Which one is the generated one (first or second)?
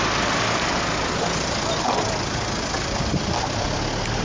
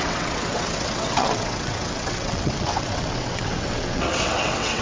second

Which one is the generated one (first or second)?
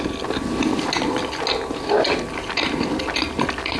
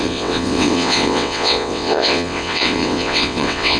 second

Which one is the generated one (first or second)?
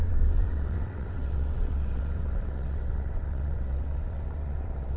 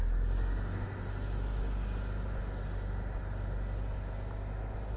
first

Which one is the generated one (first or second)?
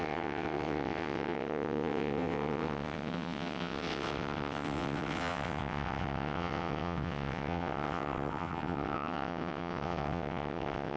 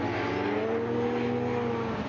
first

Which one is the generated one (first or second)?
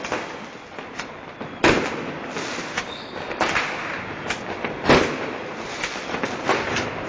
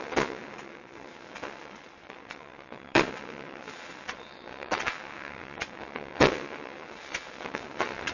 second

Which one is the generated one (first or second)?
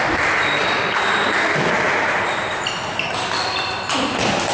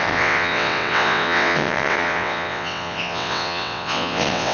second